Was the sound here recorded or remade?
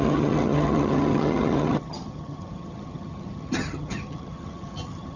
remade